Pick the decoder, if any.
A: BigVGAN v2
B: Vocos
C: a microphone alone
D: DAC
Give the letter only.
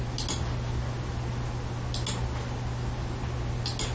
C